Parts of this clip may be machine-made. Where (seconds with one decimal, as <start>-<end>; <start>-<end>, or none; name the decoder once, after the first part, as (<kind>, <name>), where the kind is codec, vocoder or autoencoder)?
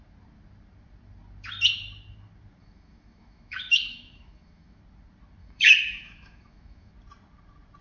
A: 2.6-4.8 (autoencoder, DAC-VAE); 5.4-6.9